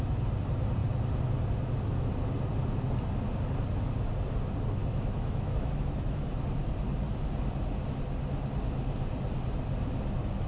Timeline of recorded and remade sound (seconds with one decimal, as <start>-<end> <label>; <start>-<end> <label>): 0.0-4.8 recorded; 4.8-6.3 remade; 6.3-10.5 recorded